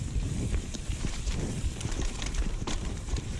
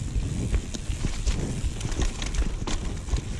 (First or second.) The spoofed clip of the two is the first